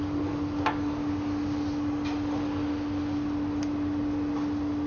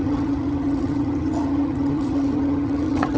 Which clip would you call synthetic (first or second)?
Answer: second